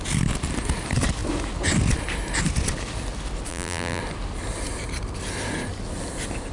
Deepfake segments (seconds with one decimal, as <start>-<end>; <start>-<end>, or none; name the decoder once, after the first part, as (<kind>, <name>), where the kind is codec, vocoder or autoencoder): 3.5-4.0 (vocoder, BigVGAN v2)

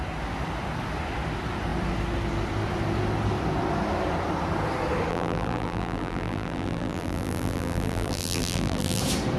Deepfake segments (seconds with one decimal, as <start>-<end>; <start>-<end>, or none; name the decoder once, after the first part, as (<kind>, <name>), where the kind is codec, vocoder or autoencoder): 5.1-9.0 (vocoder, BigVGAN v2)

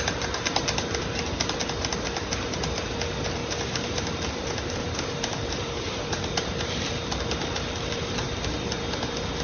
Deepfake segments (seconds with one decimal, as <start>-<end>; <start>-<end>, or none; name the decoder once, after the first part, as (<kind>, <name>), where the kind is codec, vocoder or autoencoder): 3.4-6.9 (vocoder, BigVGAN v2)

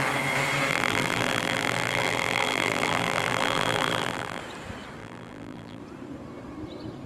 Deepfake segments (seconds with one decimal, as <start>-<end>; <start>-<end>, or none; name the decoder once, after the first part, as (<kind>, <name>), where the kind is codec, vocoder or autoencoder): 0.7-4.4 (vocoder, BigVGAN v2); 5.0-5.8

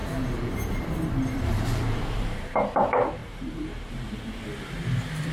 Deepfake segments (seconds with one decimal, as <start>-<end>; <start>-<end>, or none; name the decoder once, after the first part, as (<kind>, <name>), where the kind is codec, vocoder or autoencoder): 0.0-2.0 (vocoder, BigVGAN v2); 3.2-4.1

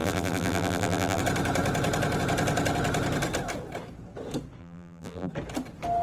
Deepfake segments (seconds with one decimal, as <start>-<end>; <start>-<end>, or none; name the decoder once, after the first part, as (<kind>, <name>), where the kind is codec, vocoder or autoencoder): 0.0-1.2 (vocoder, BigVGAN v2); 4.6-5.3

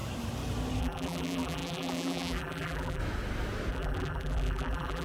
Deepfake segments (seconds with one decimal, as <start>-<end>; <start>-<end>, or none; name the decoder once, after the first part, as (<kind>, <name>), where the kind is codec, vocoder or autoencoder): 0.8-3.0 (vocoder, BigVGAN v2); 3.7-5.0